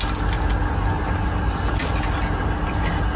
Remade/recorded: recorded